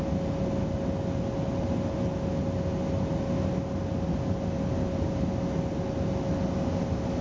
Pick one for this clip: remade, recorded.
recorded